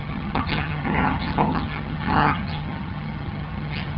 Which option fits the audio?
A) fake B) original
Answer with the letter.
A